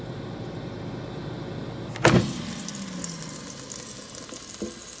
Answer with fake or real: real